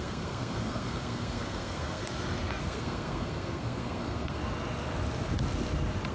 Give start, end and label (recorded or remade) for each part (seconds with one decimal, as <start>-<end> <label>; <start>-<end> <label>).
0.0-2.0 remade; 2.0-2.6 recorded; 2.6-4.4 remade; 4.4-6.1 recorded

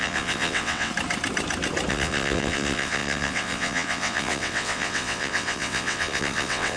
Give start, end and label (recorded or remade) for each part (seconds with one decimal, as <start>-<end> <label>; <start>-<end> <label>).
0.0-0.9 remade; 0.9-1.9 recorded; 1.9-6.8 remade